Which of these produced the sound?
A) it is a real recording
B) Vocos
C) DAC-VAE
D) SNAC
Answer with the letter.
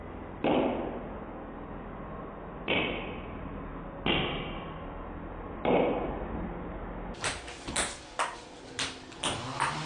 A